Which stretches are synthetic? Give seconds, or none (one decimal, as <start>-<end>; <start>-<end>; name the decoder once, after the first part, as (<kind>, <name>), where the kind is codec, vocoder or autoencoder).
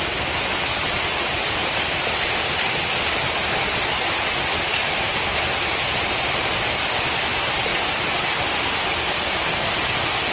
none